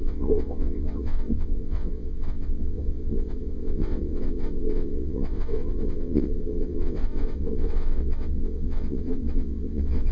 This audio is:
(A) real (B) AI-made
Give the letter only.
B